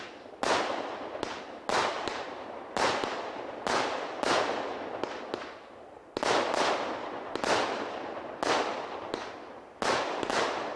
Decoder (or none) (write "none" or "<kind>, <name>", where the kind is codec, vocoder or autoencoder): none